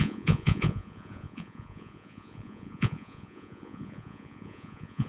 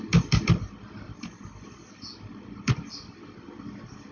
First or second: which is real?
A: second